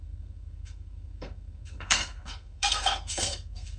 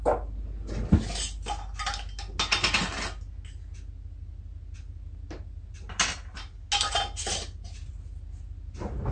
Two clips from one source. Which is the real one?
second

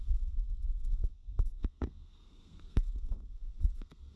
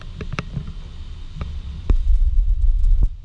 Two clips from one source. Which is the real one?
second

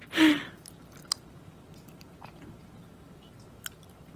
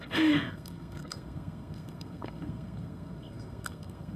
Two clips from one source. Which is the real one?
first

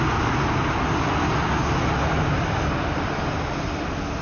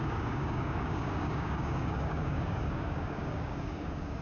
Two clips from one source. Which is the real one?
first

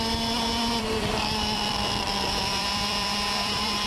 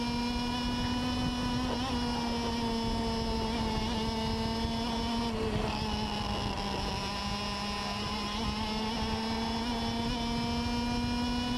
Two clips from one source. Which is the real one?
second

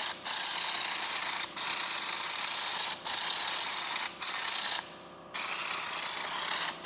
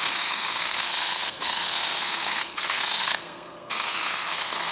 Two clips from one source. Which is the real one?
first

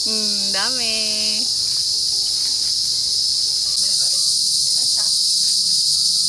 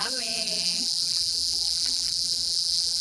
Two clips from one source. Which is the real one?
first